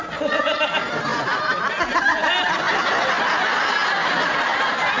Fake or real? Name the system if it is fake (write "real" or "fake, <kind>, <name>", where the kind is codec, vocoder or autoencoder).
real